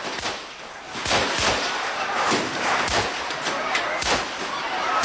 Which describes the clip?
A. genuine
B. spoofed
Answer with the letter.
A